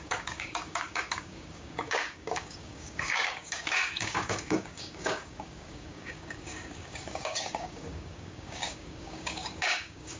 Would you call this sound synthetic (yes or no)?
yes